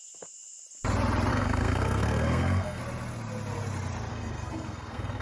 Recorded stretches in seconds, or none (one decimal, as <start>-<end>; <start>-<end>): 0.0-1.3; 2.8-4.1